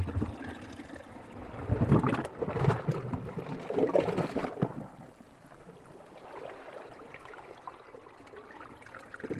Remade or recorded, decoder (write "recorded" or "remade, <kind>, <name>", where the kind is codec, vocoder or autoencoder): remade, vocoder, BigVGAN v2